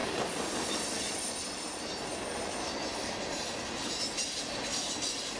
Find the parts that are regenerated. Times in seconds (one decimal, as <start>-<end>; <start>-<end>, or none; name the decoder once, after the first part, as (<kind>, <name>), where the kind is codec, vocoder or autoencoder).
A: none